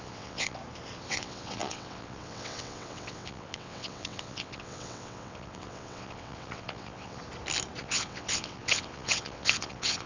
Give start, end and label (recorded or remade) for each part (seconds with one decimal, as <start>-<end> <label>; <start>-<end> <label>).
0.0-0.6 remade; 0.6-1.1 recorded; 1.1-7.2 remade; 7.2-7.8 recorded; 7.8-10.1 remade